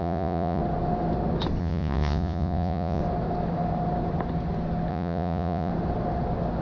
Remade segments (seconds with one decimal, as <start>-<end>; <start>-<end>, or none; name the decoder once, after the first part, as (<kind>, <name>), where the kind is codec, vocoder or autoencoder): 0.0-0.6 (vocoder, Vocos); 1.6-3.0; 4.9-5.7